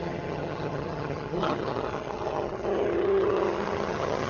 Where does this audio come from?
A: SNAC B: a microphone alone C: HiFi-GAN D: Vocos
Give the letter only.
C